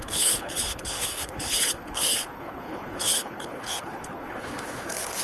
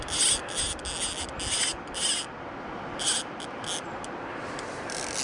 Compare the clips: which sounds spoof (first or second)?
first